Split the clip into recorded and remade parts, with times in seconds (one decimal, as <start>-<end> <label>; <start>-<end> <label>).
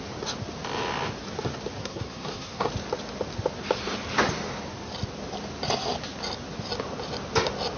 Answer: 0.0-1.8 recorded; 1.8-2.7 remade; 2.7-7.8 recorded